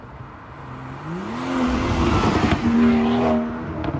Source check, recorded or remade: recorded